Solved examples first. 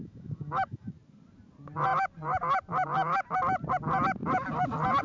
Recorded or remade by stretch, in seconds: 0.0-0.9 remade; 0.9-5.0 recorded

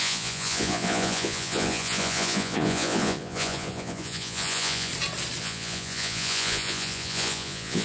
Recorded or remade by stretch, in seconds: 0.0-4.9 remade; 4.9-5.4 recorded; 5.4-7.8 remade

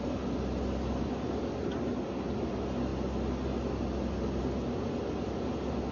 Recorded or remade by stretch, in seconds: 0.0-5.9 recorded

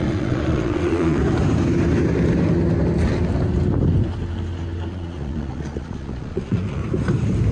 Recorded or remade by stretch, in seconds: 0.0-1.2 remade; 1.2-4.9 recorded; 4.9-6.8 remade; 6.8-7.5 recorded

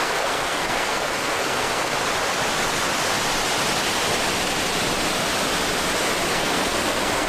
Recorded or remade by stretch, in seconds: 0.0-1.9 remade; 1.9-6.3 recorded; 6.3-7.3 remade

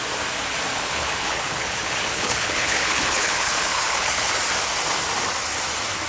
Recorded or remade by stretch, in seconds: 0.0-0.7 recorded; 0.7-4.4 remade; 4.4-6.1 recorded

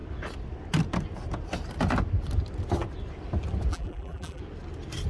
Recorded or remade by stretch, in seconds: 0.0-3.7 recorded; 3.7-4.4 remade; 4.4-5.1 recorded

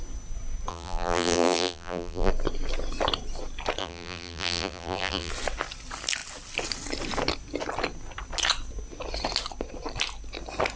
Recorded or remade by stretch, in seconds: 0.0-0.7 recorded; 0.7-2.3 remade; 2.3-3.8 recorded; 3.8-5.3 remade; 5.3-10.8 recorded